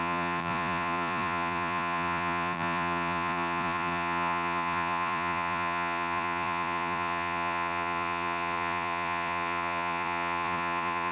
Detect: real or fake fake